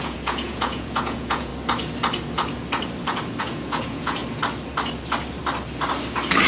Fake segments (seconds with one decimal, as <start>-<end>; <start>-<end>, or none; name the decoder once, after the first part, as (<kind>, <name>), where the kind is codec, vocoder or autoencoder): 0.0-1.5 (vocoder, Vocos); 3.4-4.2